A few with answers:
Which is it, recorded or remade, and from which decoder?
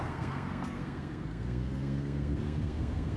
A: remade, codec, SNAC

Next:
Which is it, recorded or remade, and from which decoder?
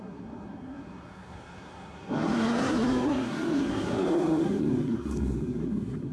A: remade, codec, SNAC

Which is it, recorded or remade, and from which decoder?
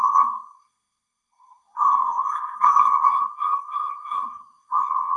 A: remade, codec, SNAC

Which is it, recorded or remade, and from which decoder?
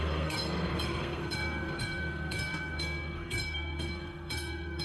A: remade, codec, SNAC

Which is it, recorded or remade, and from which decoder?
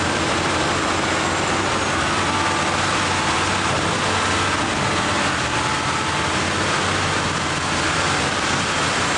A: recorded